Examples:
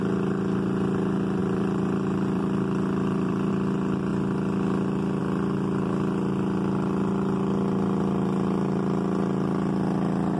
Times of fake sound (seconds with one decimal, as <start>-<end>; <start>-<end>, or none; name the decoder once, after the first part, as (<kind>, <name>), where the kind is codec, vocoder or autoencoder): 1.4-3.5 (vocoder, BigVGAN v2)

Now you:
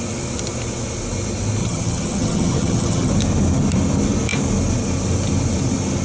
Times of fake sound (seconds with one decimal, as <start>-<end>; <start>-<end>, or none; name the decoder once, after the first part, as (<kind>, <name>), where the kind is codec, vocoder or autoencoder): 1.6-3.1 (vocoder, HiFi-GAN)

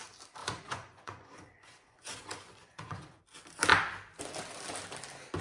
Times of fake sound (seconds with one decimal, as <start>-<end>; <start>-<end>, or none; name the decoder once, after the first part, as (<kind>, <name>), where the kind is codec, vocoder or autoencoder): 0.4-3.2 (vocoder, Vocos)

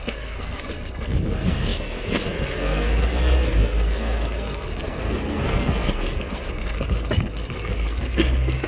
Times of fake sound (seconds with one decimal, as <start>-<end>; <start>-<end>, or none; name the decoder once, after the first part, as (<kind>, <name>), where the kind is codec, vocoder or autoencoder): 0.0-8.7 (codec, SNAC)